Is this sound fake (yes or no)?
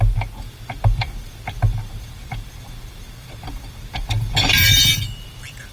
yes